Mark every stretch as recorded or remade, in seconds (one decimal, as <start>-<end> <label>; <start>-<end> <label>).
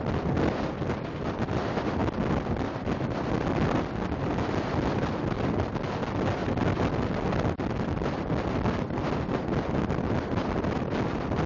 0.0-11.5 recorded